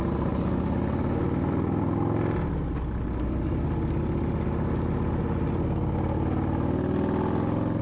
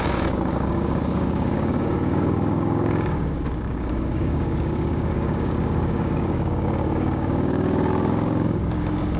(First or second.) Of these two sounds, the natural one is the first